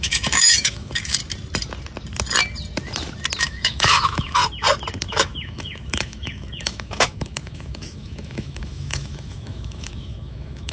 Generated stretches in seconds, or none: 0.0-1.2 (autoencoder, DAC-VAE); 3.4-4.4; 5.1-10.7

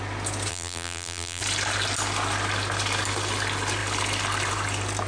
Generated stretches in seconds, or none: 0.5-1.4 (vocoder, BigVGAN v2)